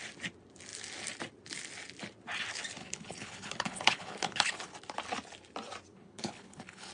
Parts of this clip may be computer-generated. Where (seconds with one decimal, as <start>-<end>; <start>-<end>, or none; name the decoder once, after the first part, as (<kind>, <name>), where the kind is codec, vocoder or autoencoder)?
2.8-4.7 (codec, HILCodec); 5.9-6.9